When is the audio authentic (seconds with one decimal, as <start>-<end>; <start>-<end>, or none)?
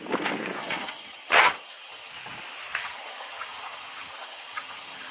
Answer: 0.0-0.6; 2.1-2.8